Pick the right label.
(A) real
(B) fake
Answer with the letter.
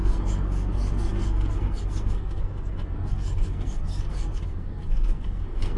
B